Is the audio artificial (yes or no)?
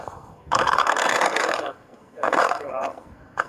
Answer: yes